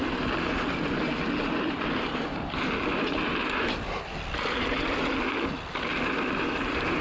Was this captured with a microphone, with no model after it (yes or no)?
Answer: yes